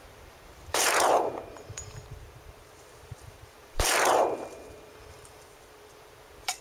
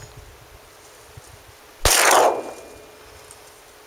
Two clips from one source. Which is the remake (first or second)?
first